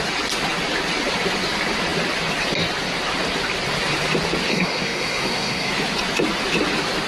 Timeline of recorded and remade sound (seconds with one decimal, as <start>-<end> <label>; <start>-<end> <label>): 0.0-4.5 recorded; 4.5-5.7 remade; 5.7-7.1 recorded